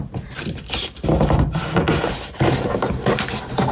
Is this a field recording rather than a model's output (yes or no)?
yes